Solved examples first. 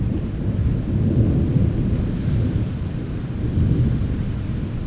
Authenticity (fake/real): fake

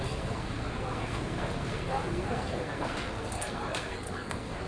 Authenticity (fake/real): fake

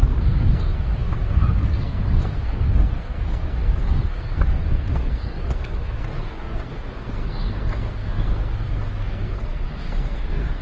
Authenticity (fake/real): fake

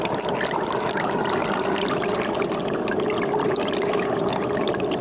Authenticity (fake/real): real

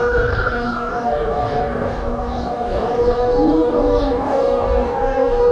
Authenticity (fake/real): fake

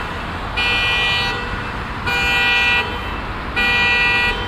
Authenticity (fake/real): real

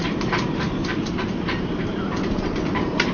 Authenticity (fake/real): fake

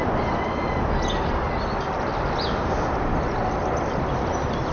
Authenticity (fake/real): real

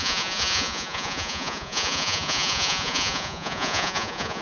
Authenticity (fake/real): fake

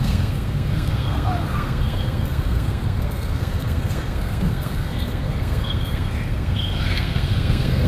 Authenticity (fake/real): fake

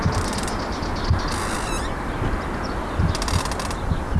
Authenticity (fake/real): real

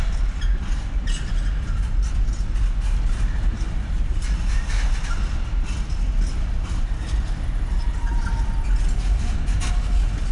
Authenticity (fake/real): real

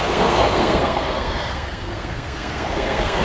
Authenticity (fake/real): fake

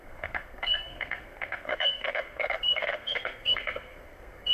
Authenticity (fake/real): fake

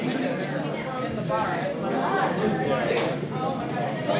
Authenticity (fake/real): real